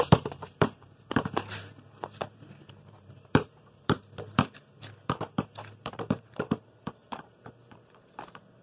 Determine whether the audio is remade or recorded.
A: remade